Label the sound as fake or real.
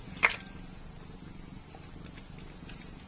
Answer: real